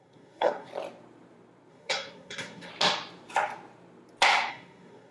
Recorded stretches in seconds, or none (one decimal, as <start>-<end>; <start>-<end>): 0.7-1.7; 2.7-4.5